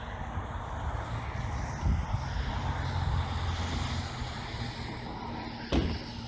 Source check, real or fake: real